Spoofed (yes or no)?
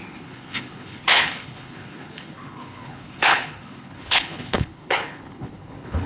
yes